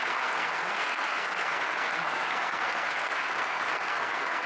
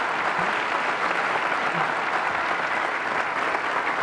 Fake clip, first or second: first